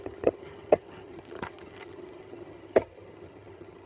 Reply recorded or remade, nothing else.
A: remade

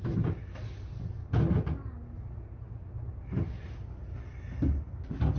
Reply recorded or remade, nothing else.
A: recorded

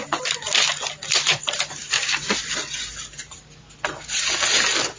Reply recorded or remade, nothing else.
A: recorded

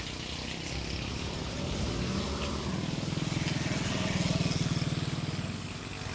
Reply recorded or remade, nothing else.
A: recorded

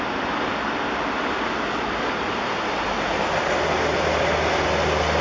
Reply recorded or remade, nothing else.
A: recorded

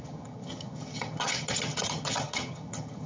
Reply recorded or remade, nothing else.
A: remade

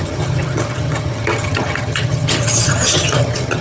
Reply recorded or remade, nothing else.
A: remade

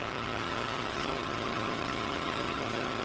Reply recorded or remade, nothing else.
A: remade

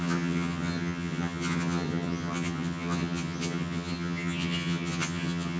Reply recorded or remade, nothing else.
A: remade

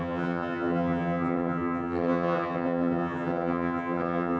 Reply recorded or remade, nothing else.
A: remade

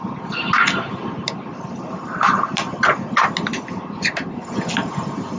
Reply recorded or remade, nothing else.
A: recorded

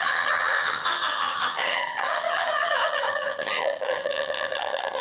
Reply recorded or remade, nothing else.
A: remade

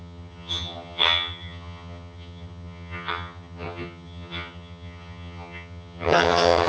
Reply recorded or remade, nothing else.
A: remade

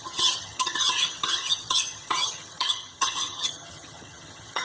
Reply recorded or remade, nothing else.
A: remade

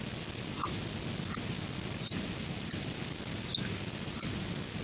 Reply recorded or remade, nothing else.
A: recorded